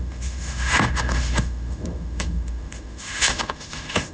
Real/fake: fake